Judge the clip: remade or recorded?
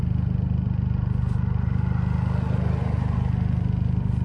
recorded